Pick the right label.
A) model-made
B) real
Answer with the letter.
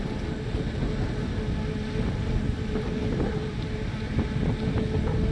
B